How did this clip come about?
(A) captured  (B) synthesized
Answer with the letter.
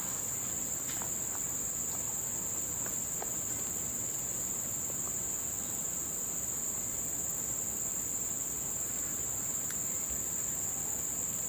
A